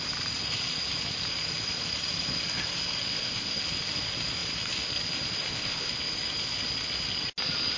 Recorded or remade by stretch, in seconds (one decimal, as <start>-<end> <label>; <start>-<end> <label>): 0.0-3.1 recorded; 3.1-3.6 remade; 3.6-5.4 recorded; 5.4-5.9 remade; 5.9-7.8 recorded